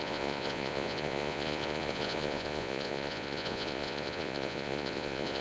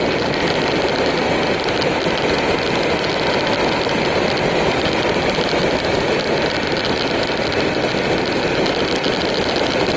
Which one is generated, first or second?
first